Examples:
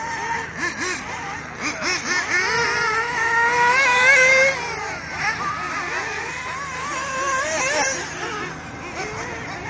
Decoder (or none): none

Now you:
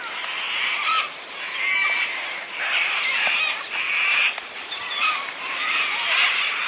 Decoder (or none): vocoder, BigVGAN v2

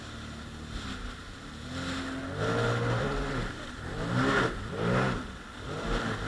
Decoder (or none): none